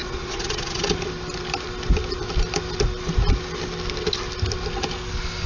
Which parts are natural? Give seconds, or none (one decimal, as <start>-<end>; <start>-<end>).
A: 0.9-5.5